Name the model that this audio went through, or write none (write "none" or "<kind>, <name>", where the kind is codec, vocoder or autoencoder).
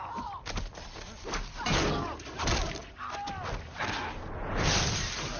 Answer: none